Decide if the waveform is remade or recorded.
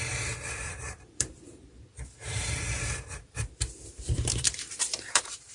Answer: remade